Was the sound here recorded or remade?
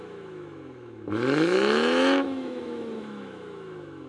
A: remade